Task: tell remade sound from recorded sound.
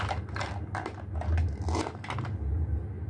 recorded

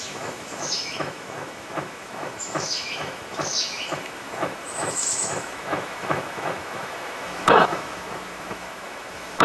remade